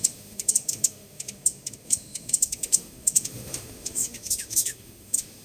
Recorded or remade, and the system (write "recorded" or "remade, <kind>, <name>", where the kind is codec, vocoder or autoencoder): remade, autoencoder, DAC-VAE